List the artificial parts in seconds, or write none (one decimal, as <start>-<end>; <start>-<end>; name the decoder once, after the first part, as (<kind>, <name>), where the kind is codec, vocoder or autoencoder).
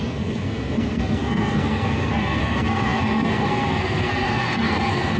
0.0-5.2 (codec, SNAC)